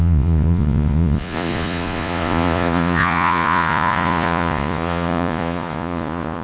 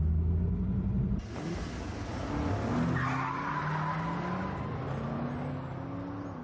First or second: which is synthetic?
first